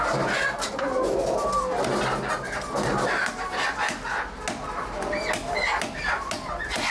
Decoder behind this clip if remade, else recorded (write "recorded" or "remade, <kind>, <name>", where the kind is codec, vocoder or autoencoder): recorded